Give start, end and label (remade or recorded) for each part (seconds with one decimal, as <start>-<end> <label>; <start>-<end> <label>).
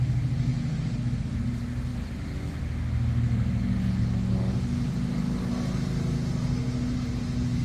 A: 0.0-7.6 recorded